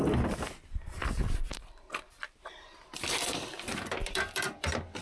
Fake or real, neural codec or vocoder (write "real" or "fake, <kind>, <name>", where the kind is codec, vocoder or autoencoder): fake, vocoder, BigVGAN v2